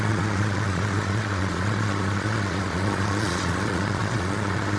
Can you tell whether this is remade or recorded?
remade